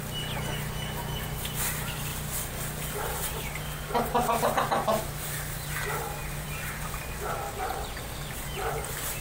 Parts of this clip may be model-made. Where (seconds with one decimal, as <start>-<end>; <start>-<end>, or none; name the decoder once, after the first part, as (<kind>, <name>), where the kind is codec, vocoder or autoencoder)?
6.2-7.5 (vocoder, BigVGAN v2)